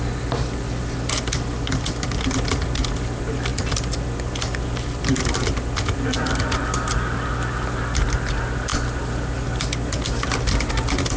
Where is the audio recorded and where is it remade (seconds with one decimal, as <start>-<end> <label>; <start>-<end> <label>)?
0.0-11.2 recorded